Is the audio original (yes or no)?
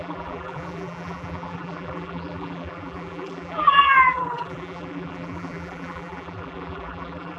no